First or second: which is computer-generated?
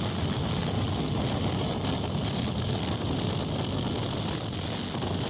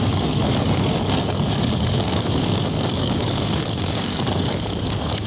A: second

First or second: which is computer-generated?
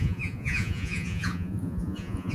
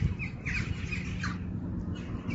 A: first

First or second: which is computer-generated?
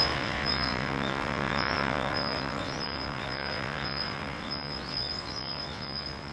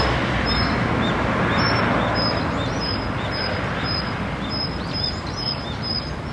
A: first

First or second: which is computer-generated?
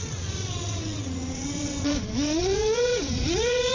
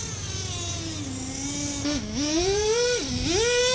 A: first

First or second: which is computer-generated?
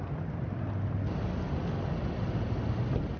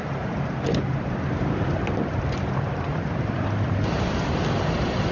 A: second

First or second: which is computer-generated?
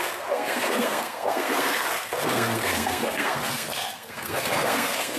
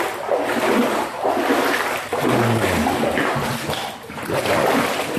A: first